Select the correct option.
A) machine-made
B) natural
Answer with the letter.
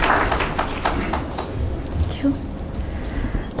B